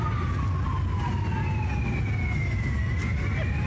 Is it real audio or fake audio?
real